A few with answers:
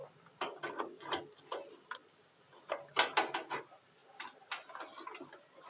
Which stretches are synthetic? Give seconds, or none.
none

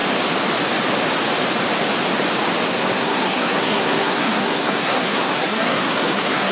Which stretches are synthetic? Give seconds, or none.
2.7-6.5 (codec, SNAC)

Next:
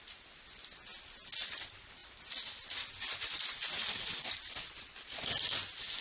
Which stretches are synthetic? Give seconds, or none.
none